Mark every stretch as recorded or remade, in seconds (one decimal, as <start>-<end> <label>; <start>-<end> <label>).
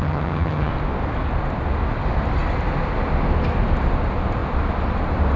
0.0-0.7 remade; 0.7-5.4 recorded